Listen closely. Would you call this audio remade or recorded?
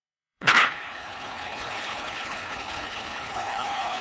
remade